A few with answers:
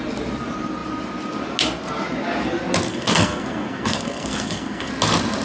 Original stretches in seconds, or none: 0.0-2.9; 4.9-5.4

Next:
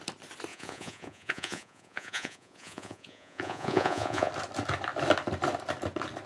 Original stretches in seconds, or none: 0.0-0.5; 4.3-6.3

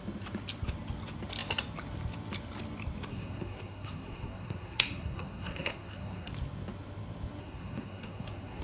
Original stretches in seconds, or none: 0.0-3.1; 6.3-7.4

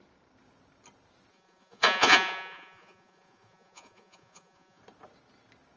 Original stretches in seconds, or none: 0.0-1.3; 4.8-5.8

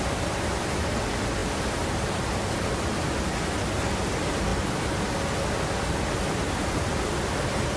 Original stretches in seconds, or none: 0.0-7.8

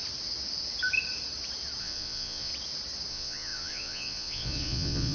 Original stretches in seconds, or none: 0.0-1.8; 2.5-3.1

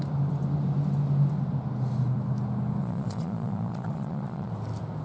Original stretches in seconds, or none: 0.0-2.8; 4.5-5.0